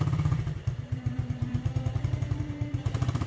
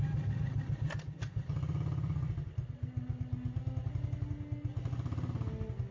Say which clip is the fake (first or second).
first